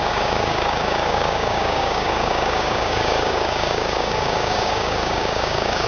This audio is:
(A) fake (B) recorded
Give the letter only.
A